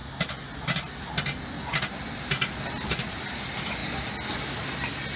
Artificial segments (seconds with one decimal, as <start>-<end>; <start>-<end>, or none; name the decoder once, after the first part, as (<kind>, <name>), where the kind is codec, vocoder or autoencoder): none

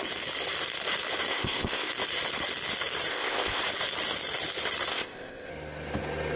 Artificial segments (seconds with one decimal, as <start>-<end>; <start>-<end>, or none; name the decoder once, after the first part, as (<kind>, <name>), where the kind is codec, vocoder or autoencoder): 1.3-1.9 (codec, ZipCodec); 3.1-3.6; 4.9-5.5

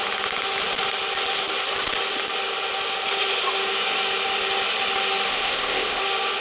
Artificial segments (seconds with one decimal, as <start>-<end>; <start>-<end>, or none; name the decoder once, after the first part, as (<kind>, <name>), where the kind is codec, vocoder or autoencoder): 5.3-6.0 (codec, ZipCodec)

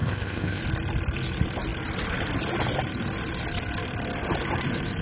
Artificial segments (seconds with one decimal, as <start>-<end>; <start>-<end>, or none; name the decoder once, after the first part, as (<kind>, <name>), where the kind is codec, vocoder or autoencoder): 0.0-0.6 (codec, ZipCodec)